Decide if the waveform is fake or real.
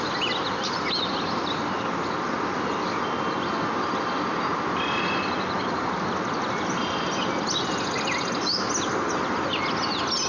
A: real